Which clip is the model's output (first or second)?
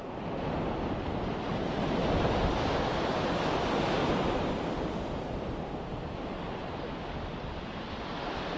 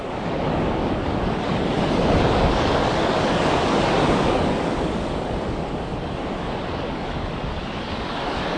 second